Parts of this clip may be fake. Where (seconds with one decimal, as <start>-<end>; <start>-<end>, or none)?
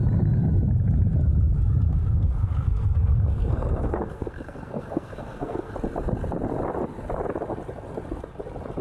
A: 1.9-5.7